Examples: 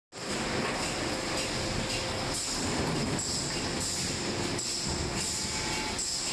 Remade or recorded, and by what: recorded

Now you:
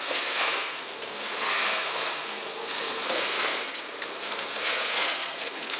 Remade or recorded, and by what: remade, codec, SNAC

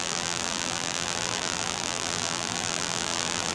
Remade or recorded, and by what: remade, vocoder, BigVGAN v2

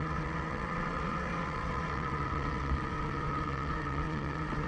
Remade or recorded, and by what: remade, vocoder, WaveNeXt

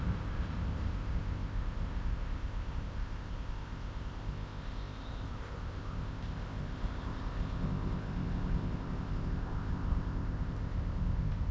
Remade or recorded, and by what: remade, codec, ZipCodec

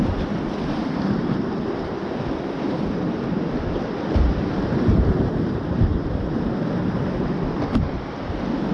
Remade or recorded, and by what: remade, vocoder, BigVGAN v2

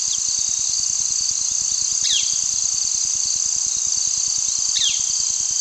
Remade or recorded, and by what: recorded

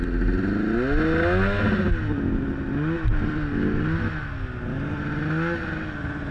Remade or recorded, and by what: recorded